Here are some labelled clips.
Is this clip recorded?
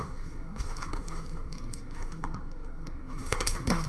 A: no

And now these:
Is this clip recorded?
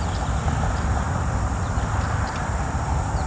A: yes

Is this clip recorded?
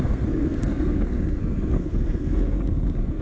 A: no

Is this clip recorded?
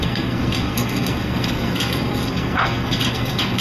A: no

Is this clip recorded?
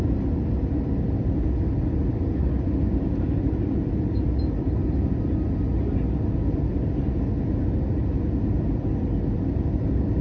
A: yes